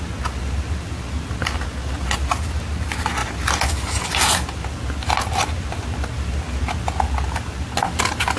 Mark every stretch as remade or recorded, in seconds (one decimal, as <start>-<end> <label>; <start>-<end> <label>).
0.0-8.4 recorded